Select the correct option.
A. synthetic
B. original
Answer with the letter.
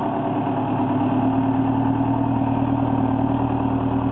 B